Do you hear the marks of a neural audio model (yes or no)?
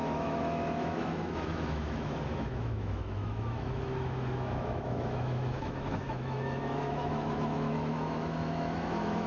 yes